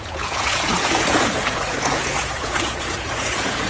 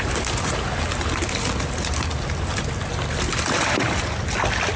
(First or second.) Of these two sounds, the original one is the second